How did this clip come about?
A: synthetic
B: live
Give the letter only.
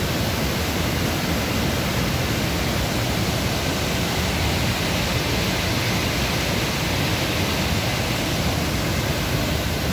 B